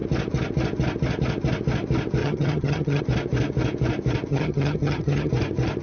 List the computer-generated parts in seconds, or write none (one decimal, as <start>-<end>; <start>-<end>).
2.2-3.0; 4.3-5.3